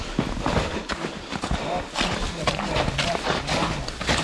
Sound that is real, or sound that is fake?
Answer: real